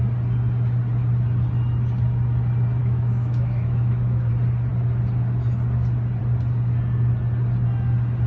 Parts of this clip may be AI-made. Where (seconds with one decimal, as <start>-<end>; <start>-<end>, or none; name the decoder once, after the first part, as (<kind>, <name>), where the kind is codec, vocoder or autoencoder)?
2.8-4.3 (autoencoder, DAC-VAE)